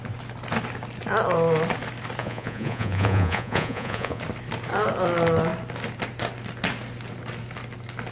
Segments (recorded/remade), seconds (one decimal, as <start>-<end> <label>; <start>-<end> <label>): 0.0-2.2 recorded; 2.2-4.2 remade; 4.2-8.1 recorded